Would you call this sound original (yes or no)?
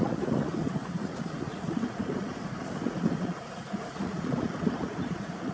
no